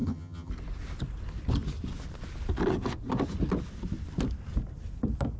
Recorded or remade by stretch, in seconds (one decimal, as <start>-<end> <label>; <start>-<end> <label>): 0.0-0.5 remade; 0.5-5.4 recorded